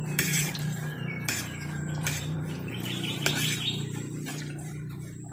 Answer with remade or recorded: remade